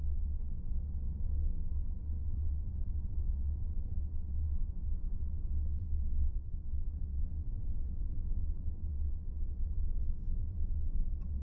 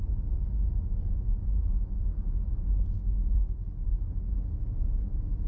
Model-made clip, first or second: first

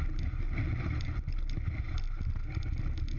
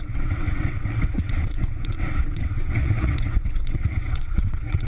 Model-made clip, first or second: second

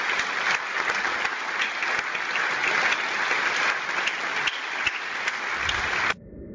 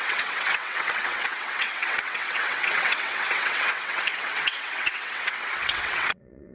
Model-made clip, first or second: second